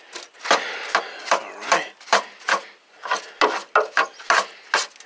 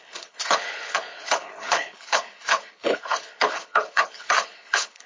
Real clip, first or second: first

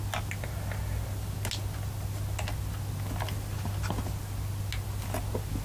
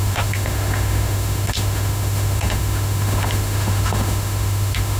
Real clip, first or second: first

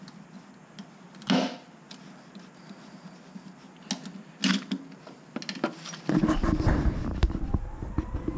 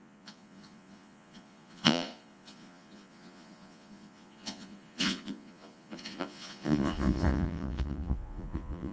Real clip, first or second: first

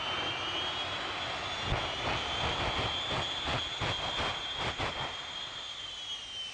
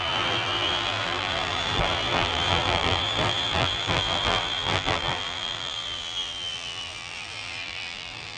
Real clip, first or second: first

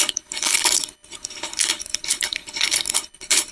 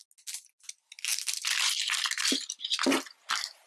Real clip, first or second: second